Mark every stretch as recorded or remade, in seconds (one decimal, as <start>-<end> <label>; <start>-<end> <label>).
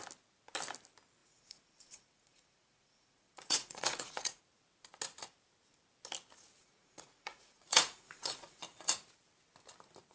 0.0-1.2 recorded; 1.2-4.4 remade; 4.4-6.6 recorded; 6.6-8.6 remade; 8.6-10.1 recorded